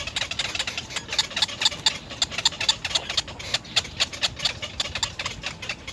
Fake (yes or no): no